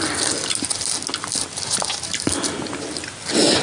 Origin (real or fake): real